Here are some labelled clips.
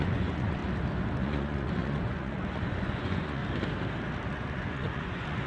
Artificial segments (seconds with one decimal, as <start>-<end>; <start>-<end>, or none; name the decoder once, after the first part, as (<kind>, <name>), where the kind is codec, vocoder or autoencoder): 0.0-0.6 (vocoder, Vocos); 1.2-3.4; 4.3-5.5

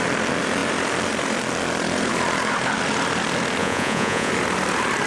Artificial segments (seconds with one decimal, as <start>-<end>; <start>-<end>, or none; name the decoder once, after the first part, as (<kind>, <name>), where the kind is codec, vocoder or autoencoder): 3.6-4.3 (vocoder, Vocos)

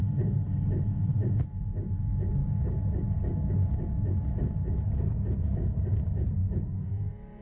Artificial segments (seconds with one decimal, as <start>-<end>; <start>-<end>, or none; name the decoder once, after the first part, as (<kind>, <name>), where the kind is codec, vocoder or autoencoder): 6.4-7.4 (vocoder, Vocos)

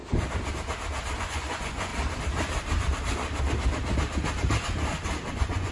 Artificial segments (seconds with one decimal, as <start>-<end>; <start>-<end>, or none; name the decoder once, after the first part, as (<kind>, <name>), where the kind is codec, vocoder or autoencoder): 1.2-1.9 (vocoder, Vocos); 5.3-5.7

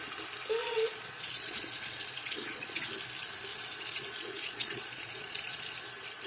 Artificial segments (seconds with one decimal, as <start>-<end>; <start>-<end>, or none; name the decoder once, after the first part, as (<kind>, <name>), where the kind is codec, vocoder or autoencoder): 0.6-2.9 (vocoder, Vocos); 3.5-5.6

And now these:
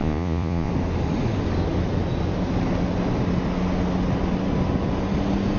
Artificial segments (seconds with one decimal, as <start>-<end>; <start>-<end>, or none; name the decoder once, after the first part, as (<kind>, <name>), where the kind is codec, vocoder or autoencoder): 0.0-0.7 (vocoder, Vocos)

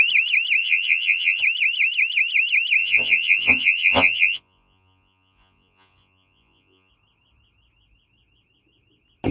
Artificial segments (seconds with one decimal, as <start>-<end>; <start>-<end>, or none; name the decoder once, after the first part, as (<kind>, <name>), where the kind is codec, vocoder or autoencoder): 0.6-1.4 (vocoder, Vocos); 2.8-6.9